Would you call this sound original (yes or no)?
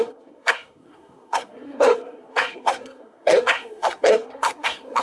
no